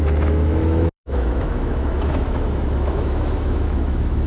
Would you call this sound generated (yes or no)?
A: yes